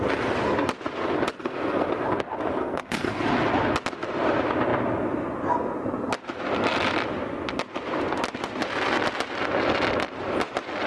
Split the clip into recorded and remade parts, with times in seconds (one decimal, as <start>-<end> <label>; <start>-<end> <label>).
0.0-1.4 recorded; 1.4-1.9 remade; 1.9-2.6 recorded; 2.6-3.2 remade; 3.2-10.9 recorded